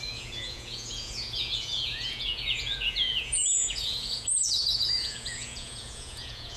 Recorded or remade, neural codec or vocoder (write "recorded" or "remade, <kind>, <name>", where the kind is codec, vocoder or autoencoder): remade, vocoder, Vocos